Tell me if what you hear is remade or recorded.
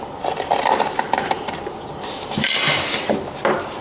recorded